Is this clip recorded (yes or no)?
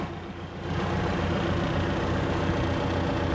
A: yes